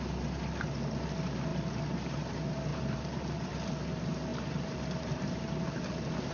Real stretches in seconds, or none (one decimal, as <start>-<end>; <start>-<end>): 0.0-2.7; 3.5-4.3; 5.8-6.3